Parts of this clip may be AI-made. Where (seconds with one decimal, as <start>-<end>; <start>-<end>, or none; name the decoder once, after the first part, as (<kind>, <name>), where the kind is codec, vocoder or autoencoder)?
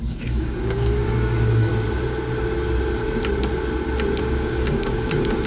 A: 0.0-1.7 (codec, DAC); 4.2-5.5